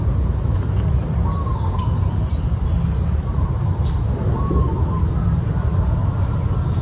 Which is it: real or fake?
fake